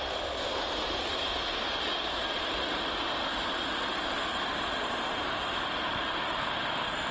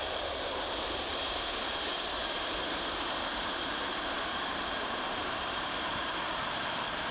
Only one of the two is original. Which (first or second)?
first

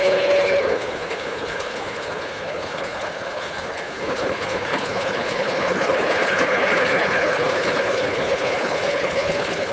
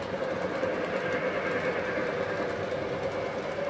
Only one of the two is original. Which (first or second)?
second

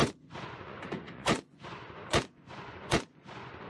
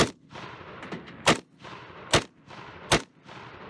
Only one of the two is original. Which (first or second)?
second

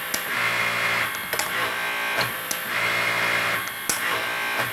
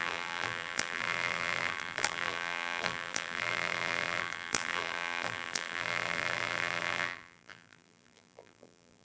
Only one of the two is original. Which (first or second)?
first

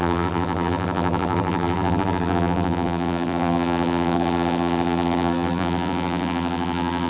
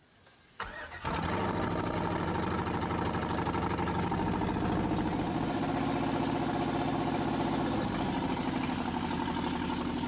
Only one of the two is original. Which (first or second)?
second